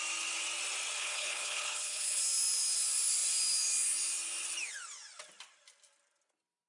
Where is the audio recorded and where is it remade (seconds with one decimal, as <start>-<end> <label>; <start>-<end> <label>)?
0.0-1.0 recorded; 1.0-2.2 remade; 2.2-6.7 recorded

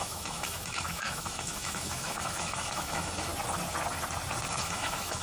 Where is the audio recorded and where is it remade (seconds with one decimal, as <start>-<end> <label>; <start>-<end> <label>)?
0.0-3.3 remade; 3.3-4.5 recorded; 4.5-5.2 remade

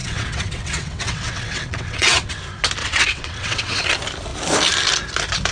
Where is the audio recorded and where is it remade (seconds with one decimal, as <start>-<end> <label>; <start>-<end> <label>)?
0.0-2.4 remade; 2.4-2.8 recorded; 2.8-3.8 remade; 3.8-5.5 recorded

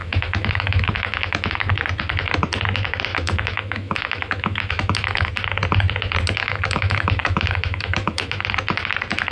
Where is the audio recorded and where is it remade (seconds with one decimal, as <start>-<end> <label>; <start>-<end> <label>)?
0.0-1.7 remade; 1.7-3.1 recorded; 3.1-5.3 remade; 5.3-6.4 recorded; 6.4-8.4 remade; 8.4-9.3 recorded